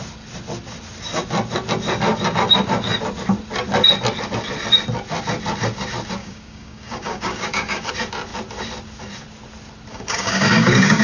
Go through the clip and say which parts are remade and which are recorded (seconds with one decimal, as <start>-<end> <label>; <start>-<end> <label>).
0.0-6.2 recorded; 6.2-7.9 remade; 7.9-9.9 recorded; 9.9-11.0 remade